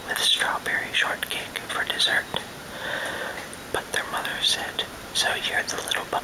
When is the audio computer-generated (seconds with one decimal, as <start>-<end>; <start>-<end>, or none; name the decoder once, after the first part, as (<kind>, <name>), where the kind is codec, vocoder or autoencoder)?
2.1-3.2 (vocoder, BigVGAN v2); 4.3-5.6

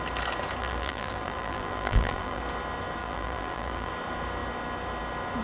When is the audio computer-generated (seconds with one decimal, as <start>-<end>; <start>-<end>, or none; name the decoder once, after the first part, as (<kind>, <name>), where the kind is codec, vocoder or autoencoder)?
0.6-2.4 (vocoder, BigVGAN v2); 3.0-3.9